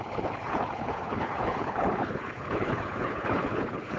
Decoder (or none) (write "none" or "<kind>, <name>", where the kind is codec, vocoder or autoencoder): codec, HILCodec